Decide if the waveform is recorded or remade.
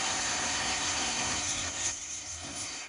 remade